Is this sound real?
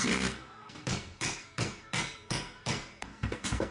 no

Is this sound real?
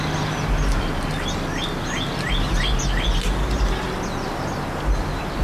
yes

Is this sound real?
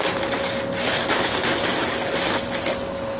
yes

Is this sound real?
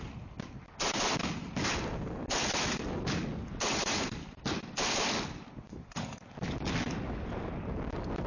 yes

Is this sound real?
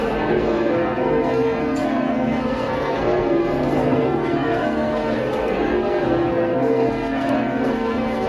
no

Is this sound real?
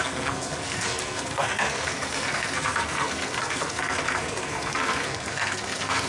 no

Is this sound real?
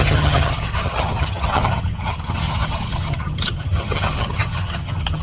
no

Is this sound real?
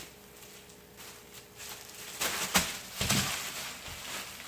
yes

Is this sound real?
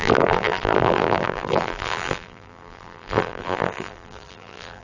no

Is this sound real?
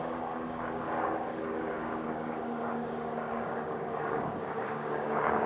no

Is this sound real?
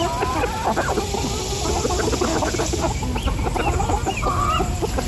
yes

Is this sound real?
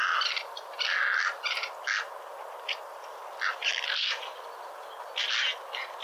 yes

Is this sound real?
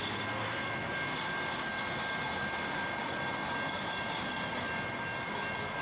yes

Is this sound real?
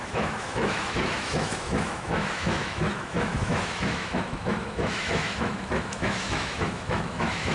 no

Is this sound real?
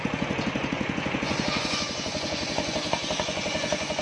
no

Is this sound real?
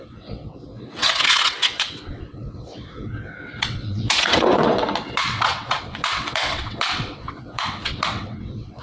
no